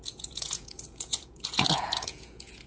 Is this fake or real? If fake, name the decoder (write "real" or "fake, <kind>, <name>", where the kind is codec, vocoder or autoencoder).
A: fake, vocoder, Vocos